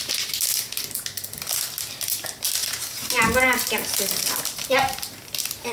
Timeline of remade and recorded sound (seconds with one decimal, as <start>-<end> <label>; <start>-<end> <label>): 0.0-2.6 recorded; 2.6-3.8 remade; 3.8-5.7 recorded